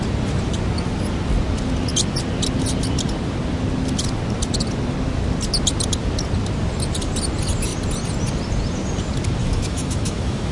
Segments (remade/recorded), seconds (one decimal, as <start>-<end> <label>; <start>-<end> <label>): 0.0-9.4 recorded; 9.4-10.5 remade